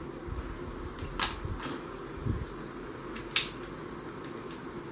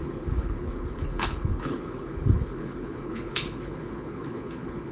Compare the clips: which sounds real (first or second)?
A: first